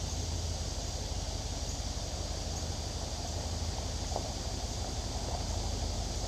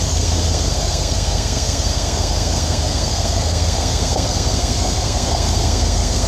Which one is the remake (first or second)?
second